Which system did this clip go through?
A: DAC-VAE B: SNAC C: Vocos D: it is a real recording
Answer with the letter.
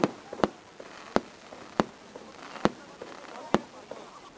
D